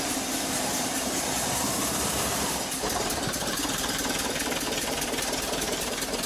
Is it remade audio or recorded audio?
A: remade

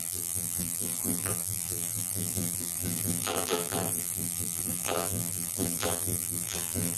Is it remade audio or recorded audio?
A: remade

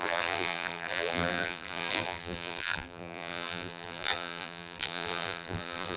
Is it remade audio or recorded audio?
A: remade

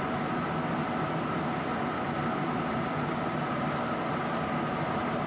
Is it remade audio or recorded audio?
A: recorded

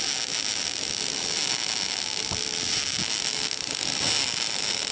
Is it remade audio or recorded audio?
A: remade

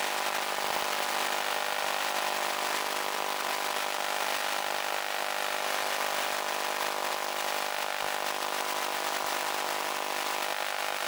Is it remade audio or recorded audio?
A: recorded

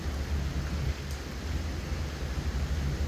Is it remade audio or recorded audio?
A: recorded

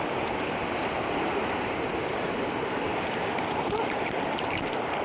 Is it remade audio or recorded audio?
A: remade